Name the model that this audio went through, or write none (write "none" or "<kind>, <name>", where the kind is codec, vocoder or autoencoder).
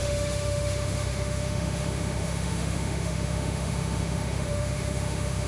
autoencoder, DAC-VAE